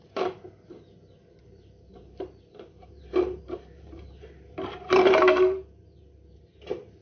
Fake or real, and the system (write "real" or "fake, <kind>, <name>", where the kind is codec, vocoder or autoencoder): fake, vocoder, BigVGAN v2